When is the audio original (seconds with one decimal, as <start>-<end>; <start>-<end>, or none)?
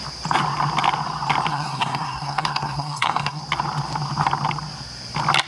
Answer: 0.0-1.5; 3.4-5.5